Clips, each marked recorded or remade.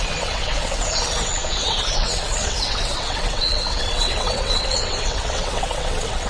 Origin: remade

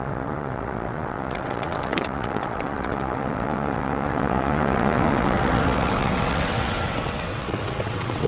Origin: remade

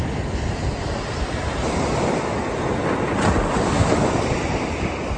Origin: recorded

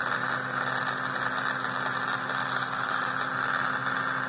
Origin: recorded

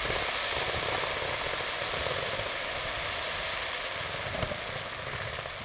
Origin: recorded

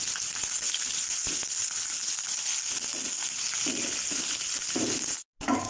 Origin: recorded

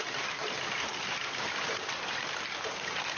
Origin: recorded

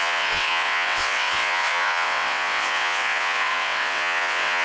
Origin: remade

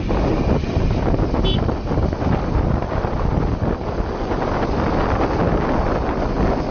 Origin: recorded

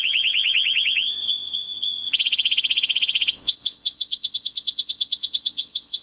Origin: remade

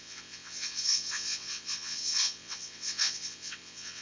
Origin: remade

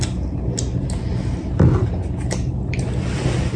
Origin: recorded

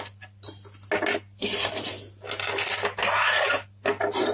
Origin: recorded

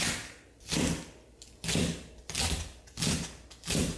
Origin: recorded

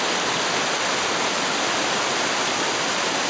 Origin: recorded